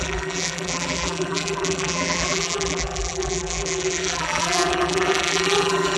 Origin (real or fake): fake